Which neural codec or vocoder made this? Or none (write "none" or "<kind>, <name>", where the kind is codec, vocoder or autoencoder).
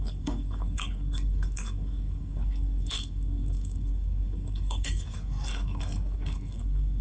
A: codec, SNAC